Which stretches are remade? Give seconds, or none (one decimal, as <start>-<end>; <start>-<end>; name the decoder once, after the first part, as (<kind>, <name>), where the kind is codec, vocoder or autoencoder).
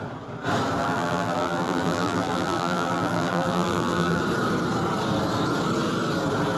0.8-4.2 (vocoder, BigVGAN v2)